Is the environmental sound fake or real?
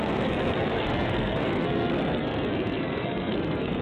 fake